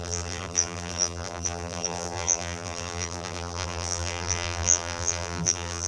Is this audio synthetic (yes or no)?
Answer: yes